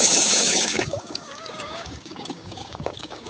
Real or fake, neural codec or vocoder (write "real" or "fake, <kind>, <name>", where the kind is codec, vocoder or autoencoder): fake, codec, DAC